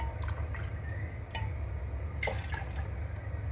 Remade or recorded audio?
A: recorded